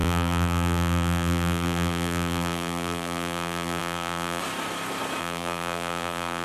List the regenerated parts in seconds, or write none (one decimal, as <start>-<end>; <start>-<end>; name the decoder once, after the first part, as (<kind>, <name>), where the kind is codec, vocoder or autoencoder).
0.0-4.4 (vocoder, BigVGAN v2); 5.2-6.4